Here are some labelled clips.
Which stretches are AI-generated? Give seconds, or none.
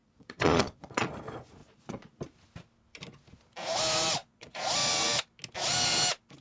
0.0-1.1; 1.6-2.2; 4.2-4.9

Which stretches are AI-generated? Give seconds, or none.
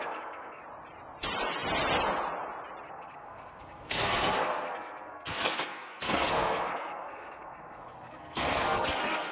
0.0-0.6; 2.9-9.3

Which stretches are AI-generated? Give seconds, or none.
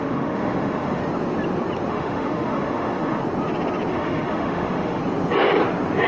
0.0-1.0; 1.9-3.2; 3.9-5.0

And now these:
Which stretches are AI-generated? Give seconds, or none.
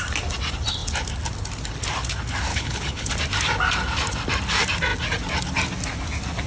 2.5-3.1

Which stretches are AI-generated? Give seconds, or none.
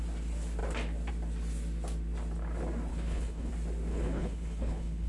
2.9-3.5; 3.9-5.1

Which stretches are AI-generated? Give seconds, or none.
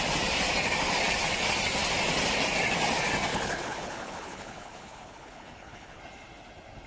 3.3-6.0